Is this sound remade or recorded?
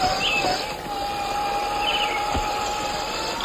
recorded